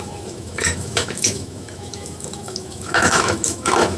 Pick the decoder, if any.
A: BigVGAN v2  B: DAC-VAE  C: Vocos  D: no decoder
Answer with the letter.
B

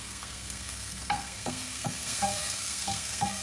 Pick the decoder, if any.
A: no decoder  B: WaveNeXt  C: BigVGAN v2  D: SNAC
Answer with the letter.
D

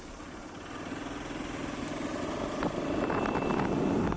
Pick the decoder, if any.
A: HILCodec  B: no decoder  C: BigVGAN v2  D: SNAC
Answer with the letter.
B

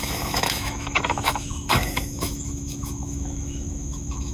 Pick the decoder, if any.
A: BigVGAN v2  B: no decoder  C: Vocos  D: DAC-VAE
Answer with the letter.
D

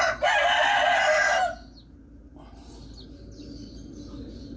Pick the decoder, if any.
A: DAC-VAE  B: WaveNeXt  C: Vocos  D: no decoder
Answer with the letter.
D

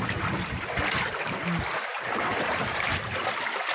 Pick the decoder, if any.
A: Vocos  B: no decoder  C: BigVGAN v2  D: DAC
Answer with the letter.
B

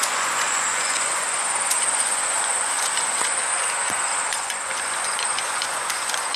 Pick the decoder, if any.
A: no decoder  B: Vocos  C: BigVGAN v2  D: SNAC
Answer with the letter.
B